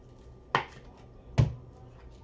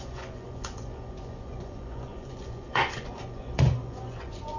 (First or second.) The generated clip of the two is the second